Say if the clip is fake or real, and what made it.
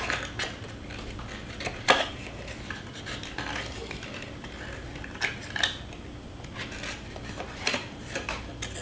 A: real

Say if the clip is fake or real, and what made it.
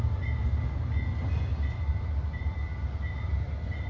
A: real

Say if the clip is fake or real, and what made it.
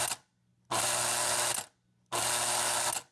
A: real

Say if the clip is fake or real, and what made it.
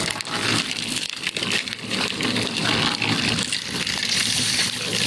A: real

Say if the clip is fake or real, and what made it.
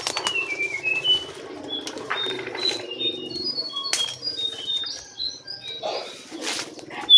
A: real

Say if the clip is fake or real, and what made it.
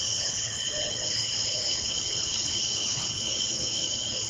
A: fake, codec, HILCodec